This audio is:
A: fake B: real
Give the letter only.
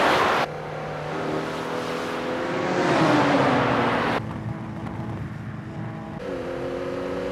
B